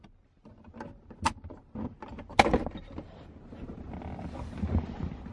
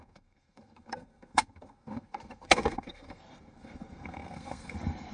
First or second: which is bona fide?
first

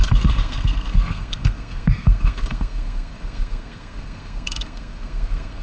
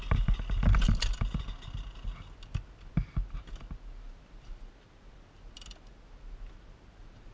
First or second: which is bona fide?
second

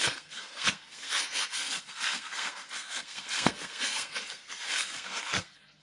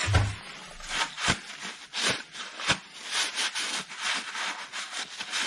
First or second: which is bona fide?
second